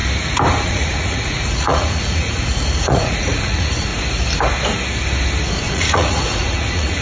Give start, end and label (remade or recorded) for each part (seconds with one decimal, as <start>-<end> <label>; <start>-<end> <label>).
0.0-0.6 recorded; 0.6-3.9 remade; 3.9-5.5 recorded; 5.5-7.0 remade